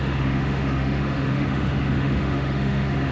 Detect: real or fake fake